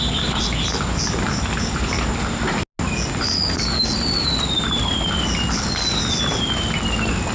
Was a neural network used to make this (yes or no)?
no